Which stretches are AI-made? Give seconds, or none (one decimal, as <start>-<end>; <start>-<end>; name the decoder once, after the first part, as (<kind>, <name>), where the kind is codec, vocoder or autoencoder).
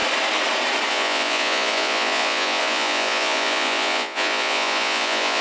0.9-5.4 (vocoder, Vocos)